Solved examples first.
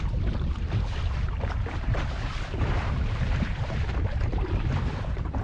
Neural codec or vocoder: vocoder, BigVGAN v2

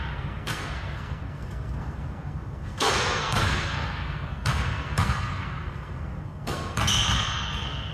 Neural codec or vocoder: codec, SNAC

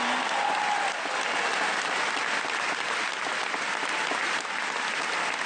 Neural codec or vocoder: none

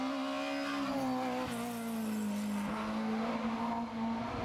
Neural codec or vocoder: none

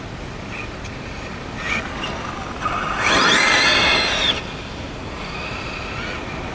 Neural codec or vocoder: none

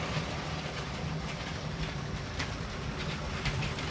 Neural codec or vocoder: none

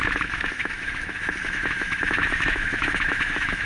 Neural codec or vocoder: autoencoder, DAC-VAE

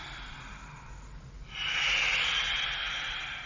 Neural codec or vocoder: none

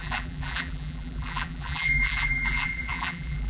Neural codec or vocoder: vocoder, BigVGAN v2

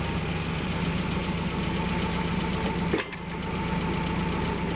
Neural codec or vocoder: none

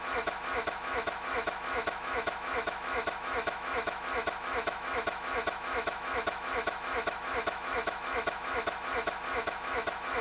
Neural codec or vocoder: autoencoder, DAC-VAE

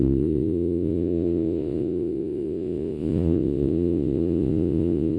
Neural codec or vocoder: vocoder, Vocos